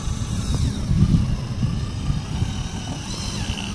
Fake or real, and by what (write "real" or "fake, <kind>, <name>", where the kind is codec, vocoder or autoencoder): real